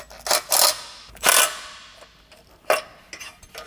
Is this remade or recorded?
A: recorded